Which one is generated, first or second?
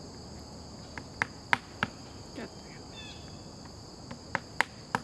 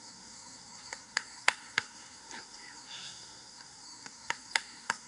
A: second